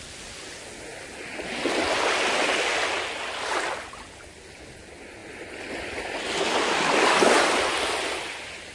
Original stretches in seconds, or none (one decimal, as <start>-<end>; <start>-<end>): 0.0-8.7